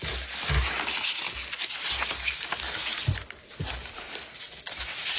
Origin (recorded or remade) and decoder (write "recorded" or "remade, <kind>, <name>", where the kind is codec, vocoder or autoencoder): recorded